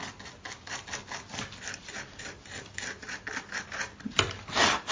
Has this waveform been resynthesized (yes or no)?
no